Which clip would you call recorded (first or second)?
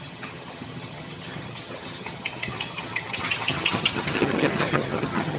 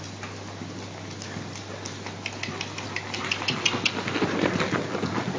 second